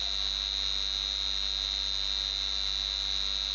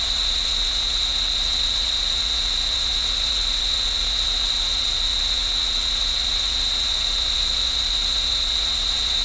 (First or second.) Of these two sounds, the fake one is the second